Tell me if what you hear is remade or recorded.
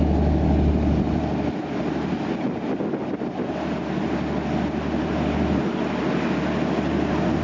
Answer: recorded